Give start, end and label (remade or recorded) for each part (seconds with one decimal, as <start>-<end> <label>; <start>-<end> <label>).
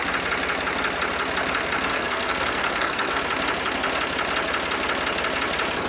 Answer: 0.0-1.9 recorded; 1.9-3.2 remade; 3.2-5.9 recorded